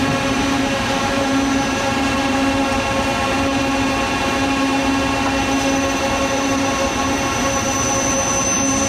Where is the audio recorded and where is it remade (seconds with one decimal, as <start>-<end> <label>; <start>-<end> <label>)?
0.0-4.8 remade; 4.8-6.1 recorded; 6.1-8.9 remade